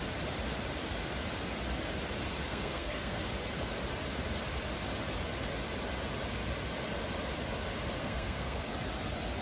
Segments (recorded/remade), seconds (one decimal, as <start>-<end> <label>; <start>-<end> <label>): 0.0-2.3 recorded; 2.3-3.2 remade; 3.2-8.0 recorded; 8.0-8.7 remade; 8.7-9.4 recorded